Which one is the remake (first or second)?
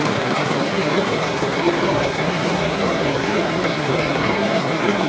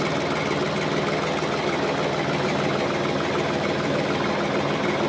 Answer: first